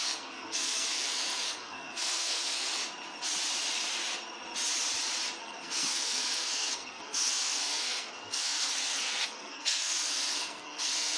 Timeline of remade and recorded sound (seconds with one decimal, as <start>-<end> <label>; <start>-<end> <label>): 0.0-2.8 remade; 2.8-5.4 recorded; 5.4-11.2 remade